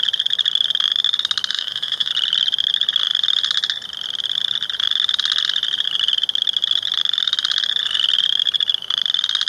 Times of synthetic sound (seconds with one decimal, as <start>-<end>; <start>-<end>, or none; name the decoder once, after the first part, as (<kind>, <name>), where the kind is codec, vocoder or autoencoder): 1.5-2.1 (autoencoder, DAC-VAE)